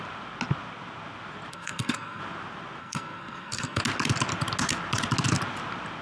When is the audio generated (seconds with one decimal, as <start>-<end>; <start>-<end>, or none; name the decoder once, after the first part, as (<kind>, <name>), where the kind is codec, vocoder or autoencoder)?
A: 1.5-2.2 (codec, SNAC); 2.8-3.8